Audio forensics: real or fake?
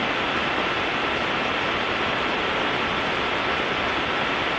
real